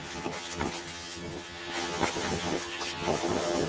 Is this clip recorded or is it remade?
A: remade